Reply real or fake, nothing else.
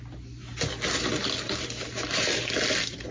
real